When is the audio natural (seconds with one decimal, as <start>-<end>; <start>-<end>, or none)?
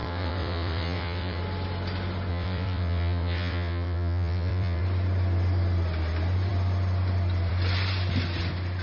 1.4-2.3; 4.8-8.8